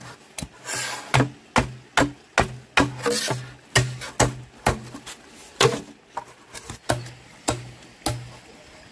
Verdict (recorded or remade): recorded